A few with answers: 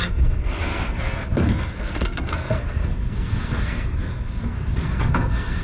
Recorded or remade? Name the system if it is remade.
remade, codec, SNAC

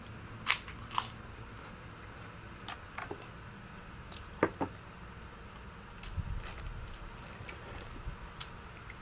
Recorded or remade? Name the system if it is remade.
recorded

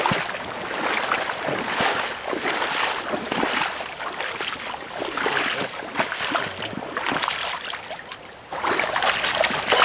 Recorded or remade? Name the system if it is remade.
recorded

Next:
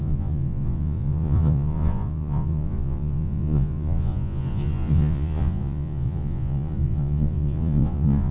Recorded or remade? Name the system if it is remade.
remade, vocoder, Vocos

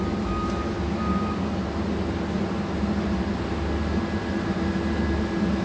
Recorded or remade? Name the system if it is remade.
recorded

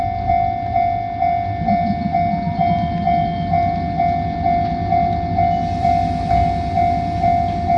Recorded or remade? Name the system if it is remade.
recorded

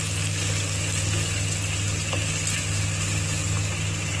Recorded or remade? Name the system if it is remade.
recorded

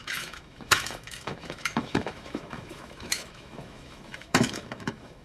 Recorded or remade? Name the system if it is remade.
remade, autoencoder, DAC-VAE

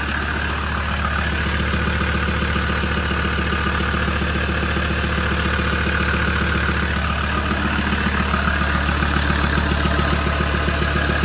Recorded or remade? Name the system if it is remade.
recorded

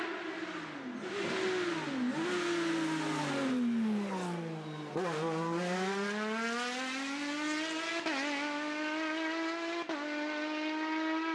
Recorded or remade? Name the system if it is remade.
recorded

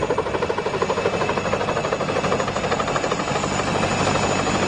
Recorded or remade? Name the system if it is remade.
recorded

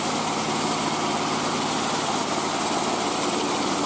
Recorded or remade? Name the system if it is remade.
recorded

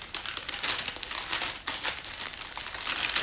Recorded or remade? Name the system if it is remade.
recorded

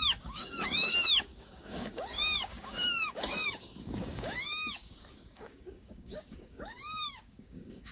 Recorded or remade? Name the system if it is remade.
remade, codec, DAC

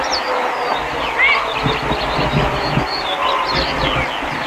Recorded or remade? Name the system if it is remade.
recorded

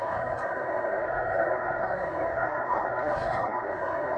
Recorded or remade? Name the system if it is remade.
remade, codec, SNAC